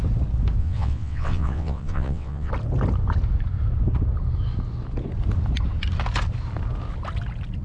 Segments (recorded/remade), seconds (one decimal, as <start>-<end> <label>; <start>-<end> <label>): 0.0-0.6 recorded; 0.6-2.5 remade; 2.5-7.6 recorded